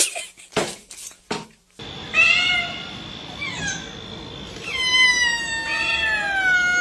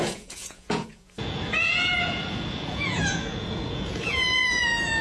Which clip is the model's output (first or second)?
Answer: second